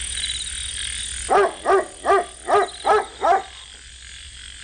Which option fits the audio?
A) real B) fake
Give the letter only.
A